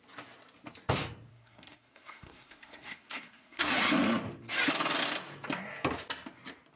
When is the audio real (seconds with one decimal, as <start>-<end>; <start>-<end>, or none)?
0.0-1.3; 3.7-6.8

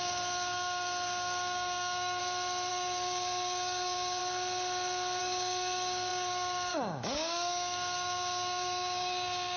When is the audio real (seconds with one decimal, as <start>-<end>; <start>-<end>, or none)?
2.2-2.7; 4.2-5.2